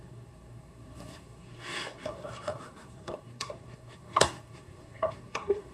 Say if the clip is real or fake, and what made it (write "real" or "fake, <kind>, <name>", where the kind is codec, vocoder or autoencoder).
fake, codec, SNAC